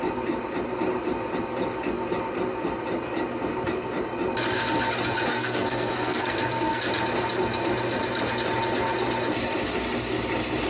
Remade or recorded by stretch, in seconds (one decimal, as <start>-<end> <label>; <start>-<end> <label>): 0.0-5.3 recorded; 5.3-6.8 remade; 6.8-10.7 recorded